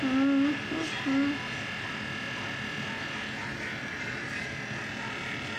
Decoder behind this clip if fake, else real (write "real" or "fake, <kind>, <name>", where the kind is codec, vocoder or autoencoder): real